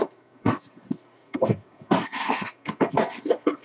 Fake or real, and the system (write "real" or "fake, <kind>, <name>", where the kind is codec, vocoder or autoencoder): fake, codec, SNAC